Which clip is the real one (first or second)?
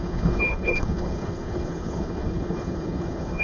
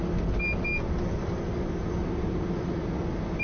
second